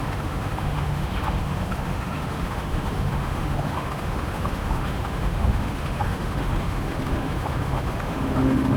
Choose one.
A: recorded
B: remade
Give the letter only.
B